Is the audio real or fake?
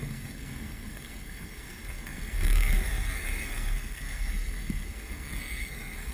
fake